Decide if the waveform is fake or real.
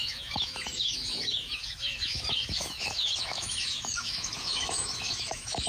fake